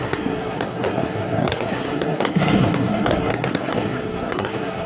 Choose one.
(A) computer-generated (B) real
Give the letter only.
A